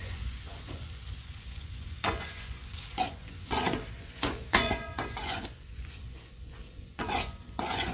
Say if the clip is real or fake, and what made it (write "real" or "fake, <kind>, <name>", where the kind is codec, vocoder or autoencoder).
fake, vocoder, Vocos